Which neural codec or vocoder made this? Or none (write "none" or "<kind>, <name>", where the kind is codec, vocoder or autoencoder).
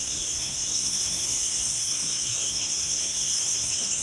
codec, SNAC